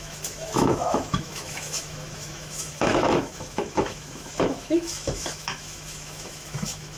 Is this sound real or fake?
fake